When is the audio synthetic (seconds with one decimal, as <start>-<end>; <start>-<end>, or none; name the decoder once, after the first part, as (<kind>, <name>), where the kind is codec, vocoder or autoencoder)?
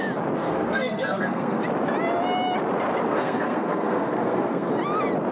0.4-1.6 (codec, SNAC); 3.1-4.7